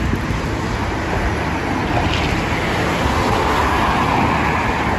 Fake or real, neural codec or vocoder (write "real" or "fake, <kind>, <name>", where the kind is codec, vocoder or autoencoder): real